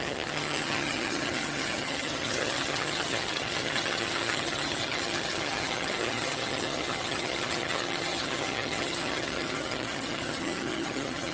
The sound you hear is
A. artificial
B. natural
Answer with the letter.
A